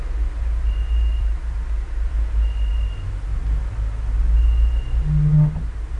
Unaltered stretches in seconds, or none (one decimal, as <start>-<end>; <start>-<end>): 0.0-1.1; 2.1-6.0